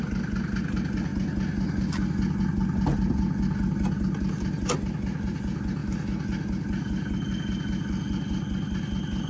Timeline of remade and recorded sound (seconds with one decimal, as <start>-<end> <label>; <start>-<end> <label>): 0.0-9.3 recorded